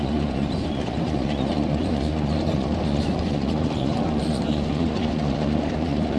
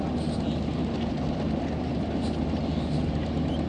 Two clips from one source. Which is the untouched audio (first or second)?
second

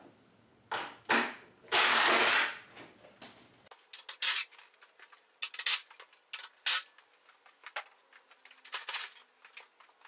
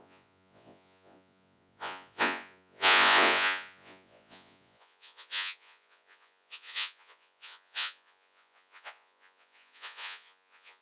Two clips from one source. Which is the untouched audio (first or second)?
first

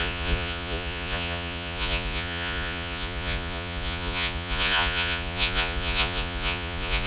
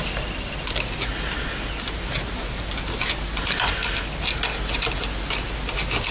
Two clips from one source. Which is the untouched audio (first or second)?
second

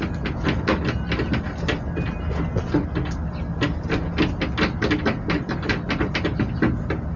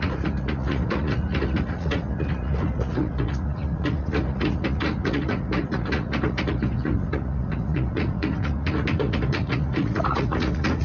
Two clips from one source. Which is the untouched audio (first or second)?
first